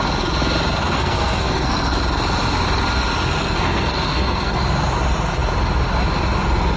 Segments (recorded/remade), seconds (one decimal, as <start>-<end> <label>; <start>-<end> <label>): 0.0-0.8 recorded; 0.8-2.0 remade; 2.0-3.4 recorded; 3.4-4.6 remade; 4.6-6.8 recorded